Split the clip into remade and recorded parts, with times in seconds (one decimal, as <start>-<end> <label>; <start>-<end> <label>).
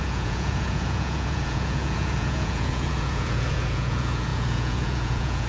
0.0-5.5 remade